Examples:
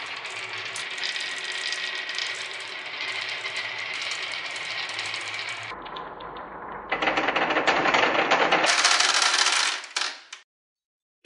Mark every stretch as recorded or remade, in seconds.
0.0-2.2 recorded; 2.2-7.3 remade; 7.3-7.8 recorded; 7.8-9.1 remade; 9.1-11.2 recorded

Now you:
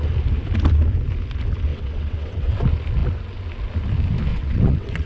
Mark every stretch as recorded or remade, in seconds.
0.0-1.7 recorded; 1.7-2.6 remade; 2.6-4.3 recorded; 4.3-5.1 remade

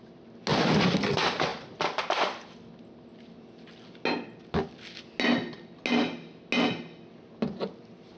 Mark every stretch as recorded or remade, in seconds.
0.0-0.5 recorded; 0.5-1.1 remade; 1.1-1.5 recorded; 1.5-2.7 remade; 2.7-8.2 recorded

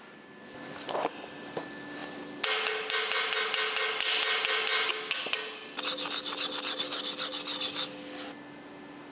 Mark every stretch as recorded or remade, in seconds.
0.0-9.1 recorded